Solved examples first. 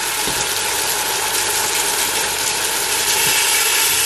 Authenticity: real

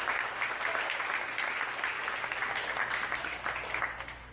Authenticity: real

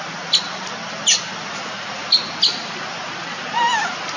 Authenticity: real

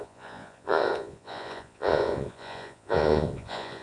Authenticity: fake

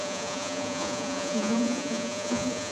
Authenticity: fake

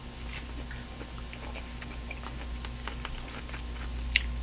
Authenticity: real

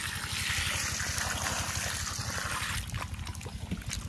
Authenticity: real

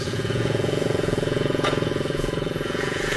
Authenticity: fake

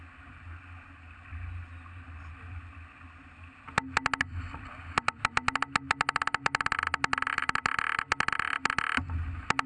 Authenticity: real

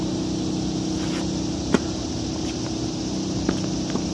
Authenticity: real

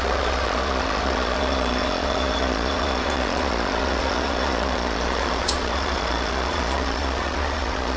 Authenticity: fake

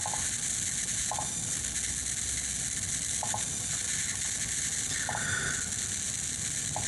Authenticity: real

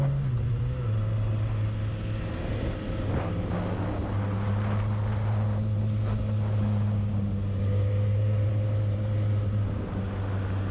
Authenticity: real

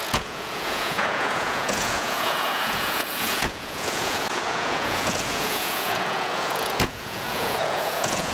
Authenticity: fake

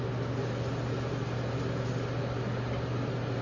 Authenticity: real